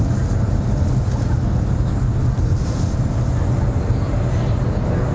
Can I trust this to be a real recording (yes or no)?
yes